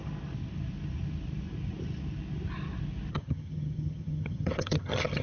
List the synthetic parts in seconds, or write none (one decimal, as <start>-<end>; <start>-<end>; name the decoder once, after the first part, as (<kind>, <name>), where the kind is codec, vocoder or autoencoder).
3.1-5.2 (vocoder, HiFi-GAN)